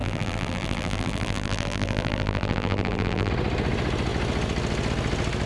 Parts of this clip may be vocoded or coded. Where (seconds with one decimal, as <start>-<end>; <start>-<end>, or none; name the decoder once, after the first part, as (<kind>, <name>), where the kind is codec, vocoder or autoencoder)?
0.0-3.3 (vocoder, BigVGAN v2)